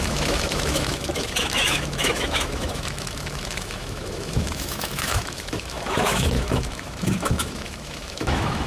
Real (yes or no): no